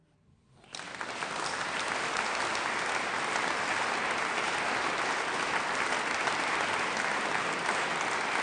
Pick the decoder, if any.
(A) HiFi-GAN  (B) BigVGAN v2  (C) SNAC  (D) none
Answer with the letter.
D